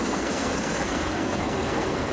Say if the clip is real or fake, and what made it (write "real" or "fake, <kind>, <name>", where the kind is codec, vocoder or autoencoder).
fake, codec, SNAC